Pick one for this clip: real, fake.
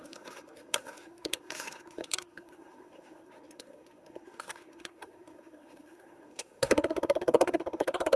fake